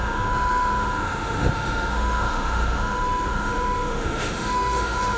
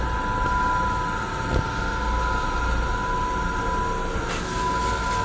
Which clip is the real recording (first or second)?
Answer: second